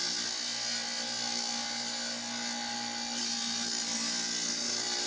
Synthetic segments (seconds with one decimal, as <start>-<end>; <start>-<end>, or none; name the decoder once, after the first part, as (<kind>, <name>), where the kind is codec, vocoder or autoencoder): none